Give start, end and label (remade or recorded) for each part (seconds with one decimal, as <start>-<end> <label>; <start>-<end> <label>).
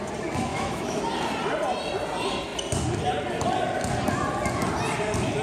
0.0-0.5 recorded; 0.5-1.0 remade; 1.0-5.4 recorded